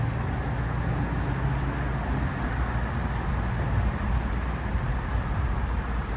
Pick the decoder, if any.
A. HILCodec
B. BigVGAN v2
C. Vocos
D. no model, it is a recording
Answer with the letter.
D